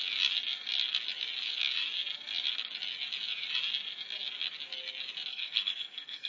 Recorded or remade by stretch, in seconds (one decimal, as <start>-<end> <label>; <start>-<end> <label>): 0.0-5.3 recorded; 5.3-6.3 remade